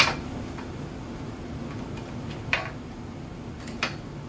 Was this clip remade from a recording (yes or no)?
no